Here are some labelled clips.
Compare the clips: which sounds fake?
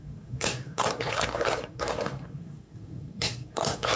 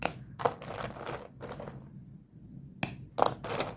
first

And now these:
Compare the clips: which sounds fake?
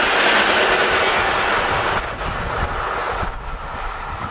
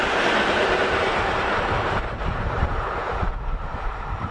second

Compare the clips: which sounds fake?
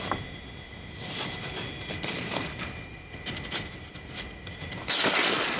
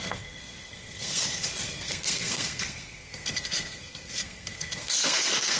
second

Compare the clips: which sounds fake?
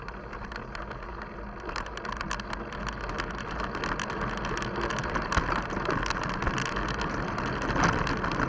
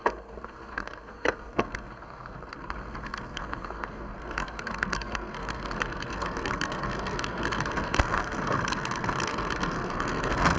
second